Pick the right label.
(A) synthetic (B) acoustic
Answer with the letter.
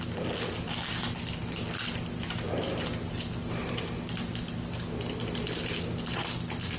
B